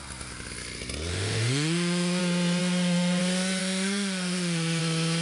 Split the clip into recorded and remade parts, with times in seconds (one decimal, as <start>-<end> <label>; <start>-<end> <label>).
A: 0.0-1.1 recorded; 1.1-2.2 remade; 2.2-2.6 recorded; 2.6-3.2 remade; 3.2-3.6 recorded; 3.6-4.8 remade; 4.8-5.2 recorded